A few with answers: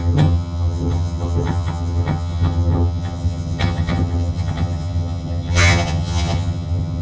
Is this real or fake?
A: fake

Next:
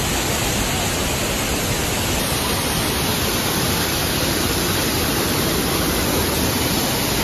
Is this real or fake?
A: real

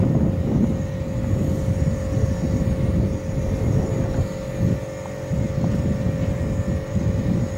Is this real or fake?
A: real